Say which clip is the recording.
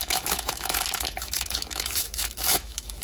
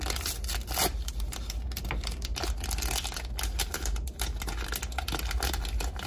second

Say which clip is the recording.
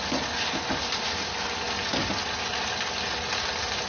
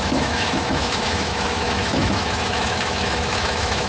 first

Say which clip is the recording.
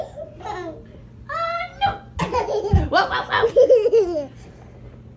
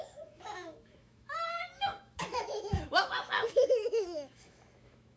first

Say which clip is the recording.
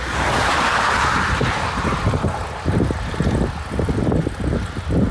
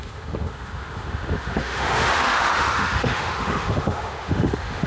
first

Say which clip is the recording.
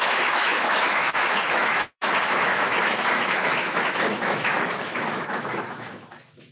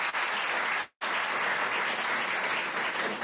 second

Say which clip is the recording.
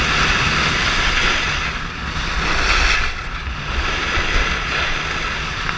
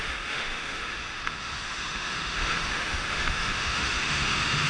first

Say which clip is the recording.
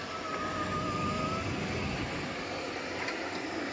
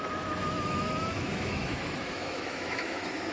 first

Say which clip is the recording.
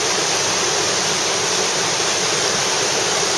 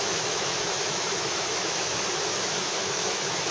first